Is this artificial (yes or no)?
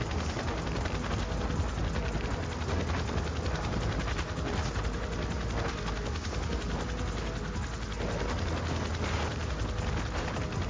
no